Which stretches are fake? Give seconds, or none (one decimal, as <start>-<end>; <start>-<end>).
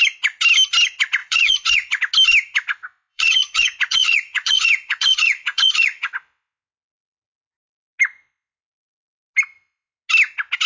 1.2-2.0; 3.1-6.1